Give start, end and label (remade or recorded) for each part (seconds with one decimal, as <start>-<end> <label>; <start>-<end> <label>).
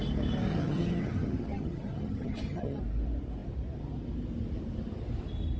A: 0.0-0.5 recorded; 0.5-2.8 remade; 2.8-5.6 recorded